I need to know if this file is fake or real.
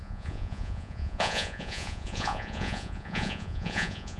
fake